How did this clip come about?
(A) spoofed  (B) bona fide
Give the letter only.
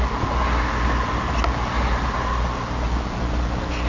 B